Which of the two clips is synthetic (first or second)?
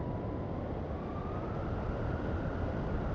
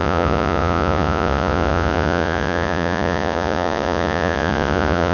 second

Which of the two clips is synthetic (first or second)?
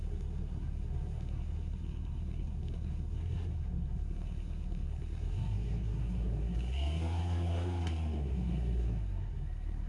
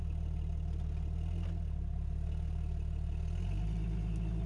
first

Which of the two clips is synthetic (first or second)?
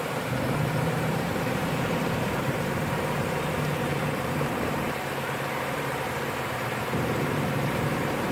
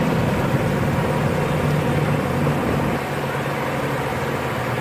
first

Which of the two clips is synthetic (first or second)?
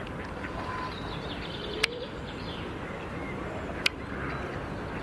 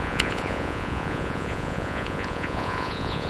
second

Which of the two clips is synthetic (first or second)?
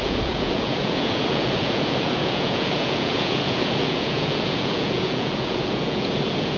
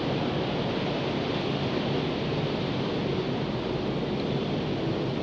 first